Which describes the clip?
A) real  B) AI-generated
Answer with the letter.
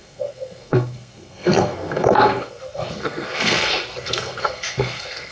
B